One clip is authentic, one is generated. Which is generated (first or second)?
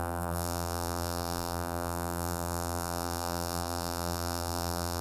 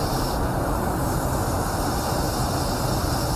first